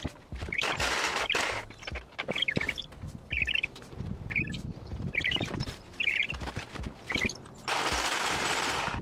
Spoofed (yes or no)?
yes